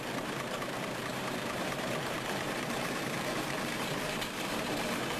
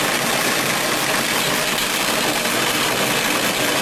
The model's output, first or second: first